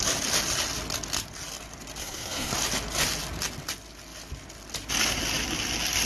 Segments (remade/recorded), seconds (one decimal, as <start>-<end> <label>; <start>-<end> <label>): 0.0-2.0 recorded; 2.0-2.5 remade; 2.5-6.1 recorded